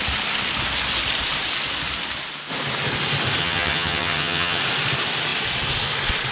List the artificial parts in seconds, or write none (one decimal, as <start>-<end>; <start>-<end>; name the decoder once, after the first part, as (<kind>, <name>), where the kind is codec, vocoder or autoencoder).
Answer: 3.4-4.6 (vocoder, HiFi-GAN)